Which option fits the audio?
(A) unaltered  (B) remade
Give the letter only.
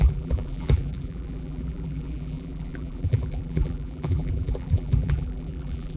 B